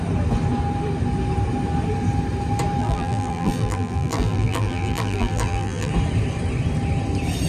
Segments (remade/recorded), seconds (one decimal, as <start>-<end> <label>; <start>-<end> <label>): 0.0-2.8 recorded; 2.8-5.9 remade; 5.9-7.5 recorded